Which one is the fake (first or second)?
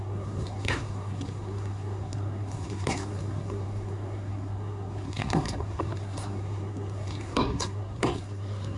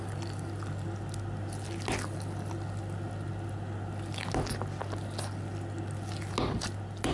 first